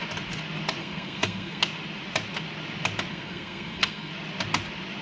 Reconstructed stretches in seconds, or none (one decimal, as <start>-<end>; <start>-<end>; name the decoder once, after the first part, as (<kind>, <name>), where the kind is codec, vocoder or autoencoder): 0.8-1.6 (codec, SNAC); 3.1-4.1